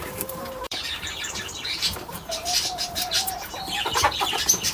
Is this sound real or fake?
fake